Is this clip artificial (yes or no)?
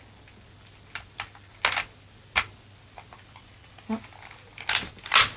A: no